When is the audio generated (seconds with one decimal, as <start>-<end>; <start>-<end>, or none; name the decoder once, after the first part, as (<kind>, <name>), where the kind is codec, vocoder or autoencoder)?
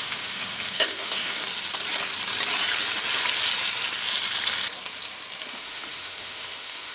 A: 0.0-1.4 (autoencoder, DAC-VAE); 5.5-6.9